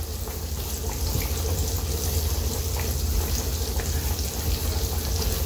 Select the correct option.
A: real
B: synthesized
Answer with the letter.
A